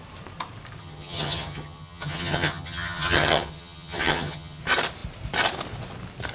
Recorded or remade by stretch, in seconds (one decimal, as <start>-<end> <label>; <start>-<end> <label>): 0.0-0.8 recorded; 0.8-4.6 remade; 4.6-6.3 recorded